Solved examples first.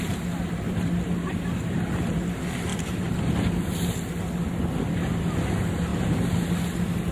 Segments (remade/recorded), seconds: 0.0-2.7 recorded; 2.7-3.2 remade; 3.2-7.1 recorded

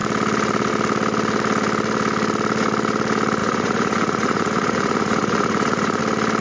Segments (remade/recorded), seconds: 0.0-3.4 recorded; 3.4-6.0 remade; 6.0-6.4 recorded

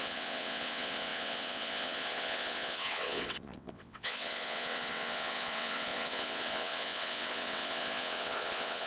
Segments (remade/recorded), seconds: 0.0-8.9 remade

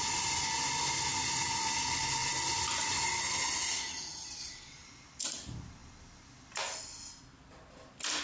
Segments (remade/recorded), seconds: 0.0-8.2 recorded

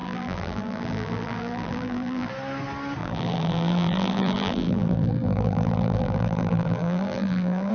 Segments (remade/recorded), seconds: 0.0-2.3 remade; 2.3-3.0 recorded; 3.0-7.7 remade

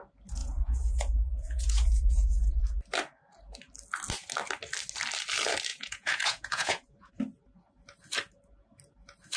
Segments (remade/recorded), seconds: 0.0-0.4 recorded; 0.4-2.6 remade; 2.6-5.7 recorded; 5.7-7.1 remade; 7.1-9.4 recorded

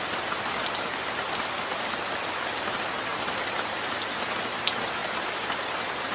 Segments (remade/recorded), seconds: 0.0-3.1 recorded; 3.1-4.2 remade; 4.2-5.0 recorded; 5.0-6.1 remade